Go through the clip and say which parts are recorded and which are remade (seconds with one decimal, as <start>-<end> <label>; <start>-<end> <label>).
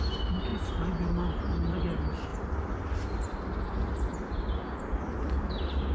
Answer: 0.0-5.9 recorded